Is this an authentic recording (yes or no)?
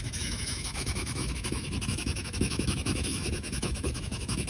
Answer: no